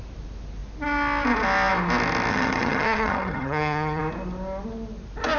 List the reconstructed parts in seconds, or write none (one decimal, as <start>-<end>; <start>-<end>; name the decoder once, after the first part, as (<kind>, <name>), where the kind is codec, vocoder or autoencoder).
2.3-4.0 (vocoder, HiFi-GAN)